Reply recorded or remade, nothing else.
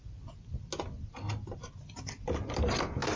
recorded